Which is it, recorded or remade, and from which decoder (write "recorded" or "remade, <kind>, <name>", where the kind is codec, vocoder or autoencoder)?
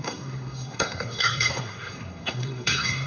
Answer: remade, codec, SNAC